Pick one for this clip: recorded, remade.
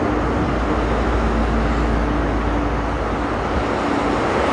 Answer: recorded